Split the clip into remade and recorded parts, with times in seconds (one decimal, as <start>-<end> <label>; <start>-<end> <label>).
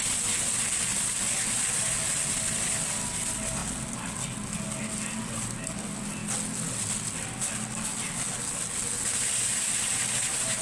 0.0-10.6 recorded